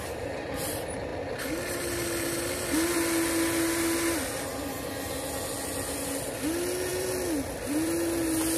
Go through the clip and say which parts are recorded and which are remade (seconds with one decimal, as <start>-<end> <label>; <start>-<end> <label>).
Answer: 0.0-6.9 recorded; 6.9-8.1 remade; 8.1-8.6 recorded